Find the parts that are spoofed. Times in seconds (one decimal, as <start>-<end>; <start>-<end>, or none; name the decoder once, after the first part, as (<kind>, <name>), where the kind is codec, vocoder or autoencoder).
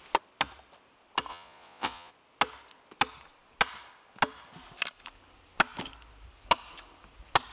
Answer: 1.3-2.1 (vocoder, Vocos)